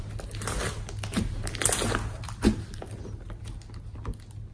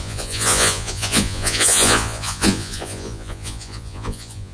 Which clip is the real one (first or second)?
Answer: first